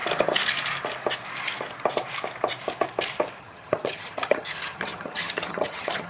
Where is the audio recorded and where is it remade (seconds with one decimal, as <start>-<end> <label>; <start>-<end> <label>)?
0.0-3.4 recorded; 3.4-6.1 remade